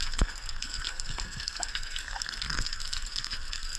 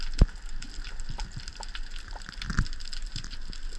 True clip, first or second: second